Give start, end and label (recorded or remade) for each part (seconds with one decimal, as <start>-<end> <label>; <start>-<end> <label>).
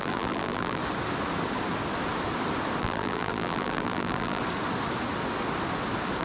0.0-0.8 remade; 0.8-2.8 recorded; 2.8-4.4 remade; 4.4-6.2 recorded